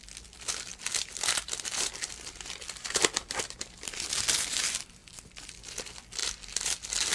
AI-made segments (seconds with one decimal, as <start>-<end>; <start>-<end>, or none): 0.7-4.5; 5.0-5.6; 6.2-7.1